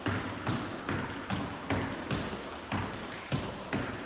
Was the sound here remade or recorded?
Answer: recorded